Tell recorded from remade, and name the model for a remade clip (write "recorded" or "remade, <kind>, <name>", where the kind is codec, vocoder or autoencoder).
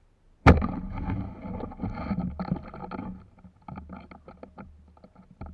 recorded